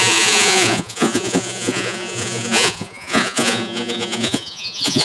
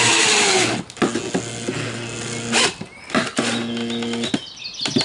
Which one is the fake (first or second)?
first